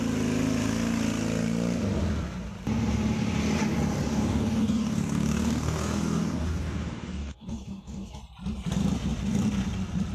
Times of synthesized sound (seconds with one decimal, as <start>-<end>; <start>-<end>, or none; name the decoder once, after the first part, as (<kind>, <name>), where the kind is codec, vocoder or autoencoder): 4.1-8.2 (codec, DAC)